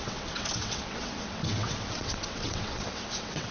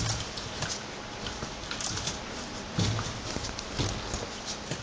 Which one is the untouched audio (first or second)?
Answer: second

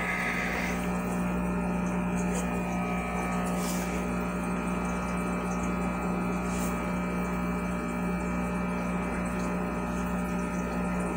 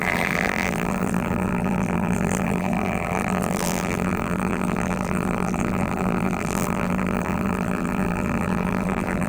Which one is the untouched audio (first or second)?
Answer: first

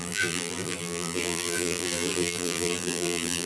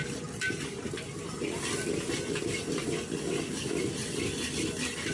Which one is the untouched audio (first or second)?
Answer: second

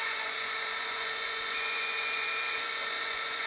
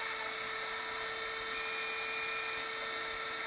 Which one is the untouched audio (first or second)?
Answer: second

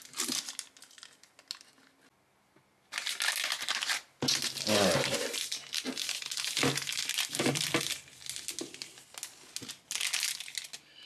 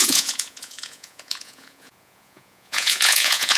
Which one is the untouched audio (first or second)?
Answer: first